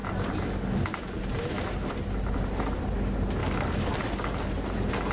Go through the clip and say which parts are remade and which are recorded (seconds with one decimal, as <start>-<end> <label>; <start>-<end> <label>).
0.0-3.4 recorded; 3.4-4.4 remade; 4.4-5.1 recorded